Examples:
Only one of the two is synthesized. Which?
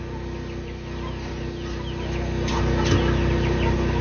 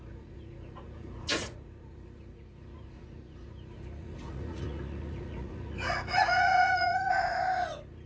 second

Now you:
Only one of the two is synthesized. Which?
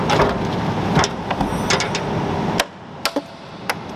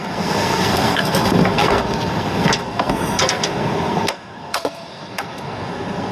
second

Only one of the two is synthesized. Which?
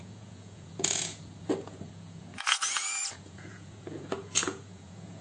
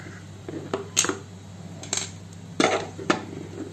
first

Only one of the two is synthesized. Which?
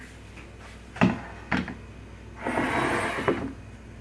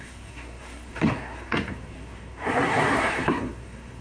second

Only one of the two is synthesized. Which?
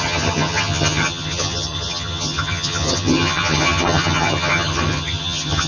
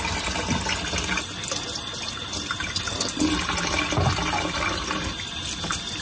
first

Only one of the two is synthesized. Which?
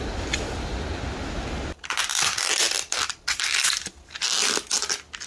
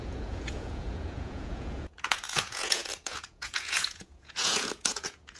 second